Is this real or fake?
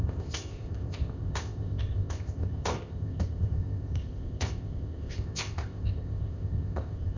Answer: fake